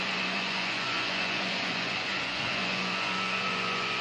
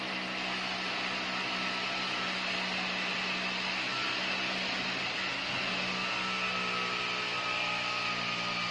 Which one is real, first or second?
second